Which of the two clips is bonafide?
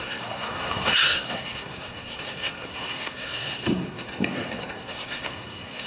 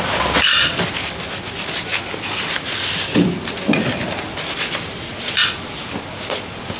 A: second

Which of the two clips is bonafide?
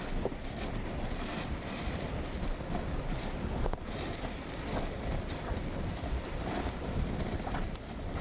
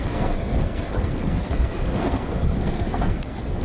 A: first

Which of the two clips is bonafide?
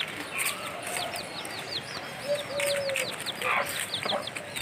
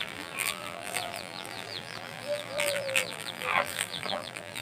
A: first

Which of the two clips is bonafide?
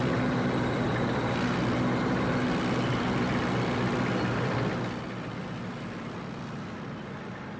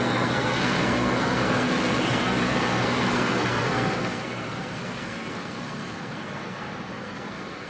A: first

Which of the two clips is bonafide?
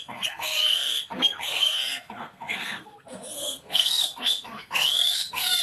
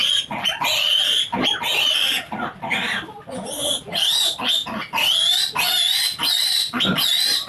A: second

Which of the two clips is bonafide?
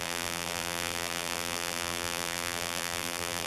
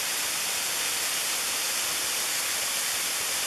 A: second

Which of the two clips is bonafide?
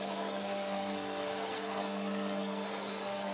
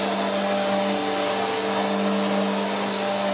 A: second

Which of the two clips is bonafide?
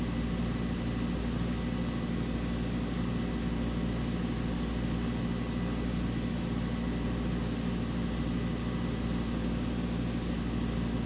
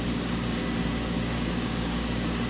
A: first